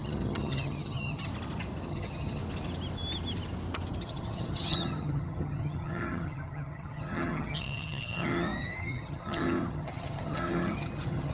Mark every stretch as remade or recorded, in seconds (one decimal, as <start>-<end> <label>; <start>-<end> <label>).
0.0-1.3 remade; 1.3-1.9 recorded; 1.9-2.4 remade; 2.4-4.0 recorded; 4.0-11.3 remade

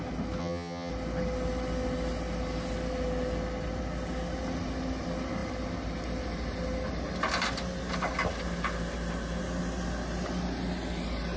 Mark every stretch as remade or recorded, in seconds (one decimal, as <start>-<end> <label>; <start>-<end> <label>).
0.0-0.4 recorded; 0.4-0.9 remade; 0.9-11.4 recorded

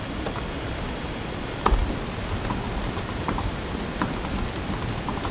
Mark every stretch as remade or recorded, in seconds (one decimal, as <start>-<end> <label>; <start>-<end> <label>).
0.0-5.3 recorded

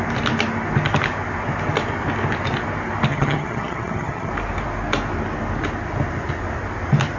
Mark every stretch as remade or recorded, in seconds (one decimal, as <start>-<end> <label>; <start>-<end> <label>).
0.0-3.1 recorded; 3.1-4.3 remade; 4.3-7.2 recorded

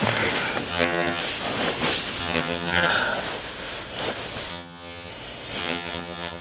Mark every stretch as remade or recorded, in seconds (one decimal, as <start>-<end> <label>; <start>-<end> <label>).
0.0-0.7 recorded; 0.7-1.2 remade; 1.2-2.2 recorded; 2.2-2.9 remade; 2.9-4.5 recorded; 4.5-5.1 remade; 5.1-5.6 recorded; 5.6-6.4 remade

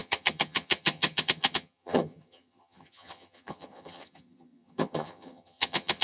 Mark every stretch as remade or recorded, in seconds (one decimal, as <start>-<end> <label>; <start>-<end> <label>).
0.0-6.0 remade

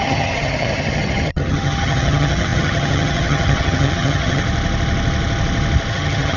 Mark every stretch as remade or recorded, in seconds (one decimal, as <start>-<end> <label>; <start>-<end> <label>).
0.0-4.4 remade; 4.4-5.9 recorded; 5.9-6.4 remade